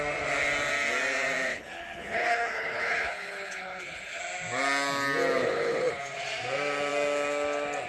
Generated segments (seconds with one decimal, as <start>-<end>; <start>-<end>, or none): 1.5-4.2; 5.4-5.9